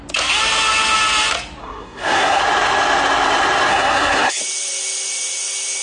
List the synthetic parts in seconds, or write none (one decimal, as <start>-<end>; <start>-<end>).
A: 1.6-2.4; 3.7-4.4